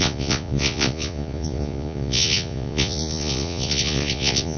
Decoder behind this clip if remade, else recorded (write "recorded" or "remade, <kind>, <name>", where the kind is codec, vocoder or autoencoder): remade, vocoder, Vocos